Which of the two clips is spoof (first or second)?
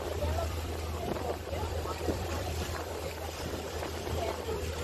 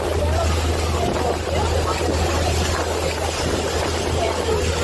first